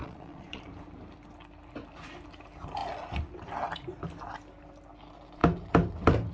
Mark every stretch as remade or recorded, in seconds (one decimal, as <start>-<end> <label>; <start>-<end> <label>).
0.0-0.6 remade; 0.6-6.3 recorded